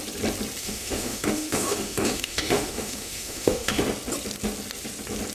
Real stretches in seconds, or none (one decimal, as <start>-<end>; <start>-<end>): 0.0-0.6; 3.8-5.3